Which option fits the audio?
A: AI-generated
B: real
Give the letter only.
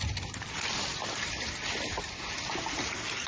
B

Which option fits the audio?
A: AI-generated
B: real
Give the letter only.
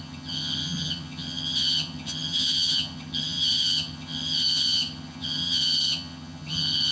A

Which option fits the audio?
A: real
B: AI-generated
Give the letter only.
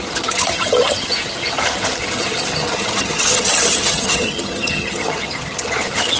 B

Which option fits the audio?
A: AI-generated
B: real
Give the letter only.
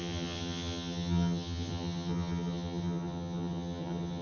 A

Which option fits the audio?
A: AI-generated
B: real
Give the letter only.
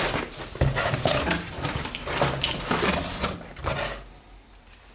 B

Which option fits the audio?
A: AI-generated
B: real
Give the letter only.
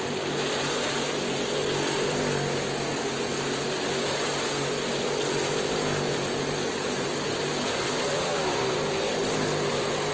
B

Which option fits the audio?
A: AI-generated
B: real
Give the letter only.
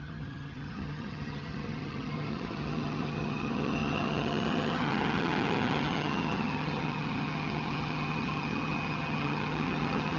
A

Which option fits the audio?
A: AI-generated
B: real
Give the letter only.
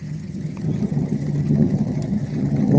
A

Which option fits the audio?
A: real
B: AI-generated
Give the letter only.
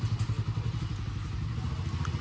A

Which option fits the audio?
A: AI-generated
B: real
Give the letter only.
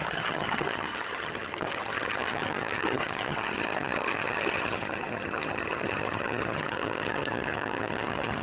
A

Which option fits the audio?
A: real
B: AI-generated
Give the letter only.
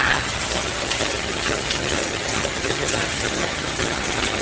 B